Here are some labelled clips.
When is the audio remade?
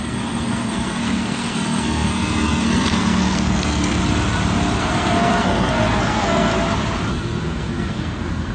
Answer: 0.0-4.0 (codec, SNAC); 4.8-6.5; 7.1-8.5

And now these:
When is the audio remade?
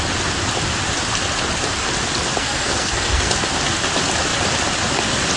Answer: 2.4-3.3 (codec, SNAC)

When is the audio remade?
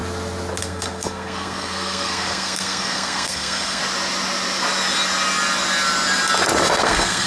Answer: 0.6-3.8 (codec, SNAC); 6.8-7.3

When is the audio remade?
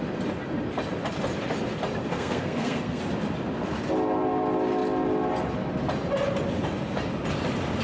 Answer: 2.0-3.0 (codec, SNAC)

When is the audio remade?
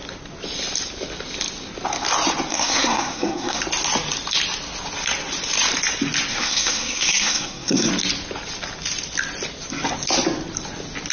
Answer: 2.5-3.6 (codec, SNAC); 6.3-7.9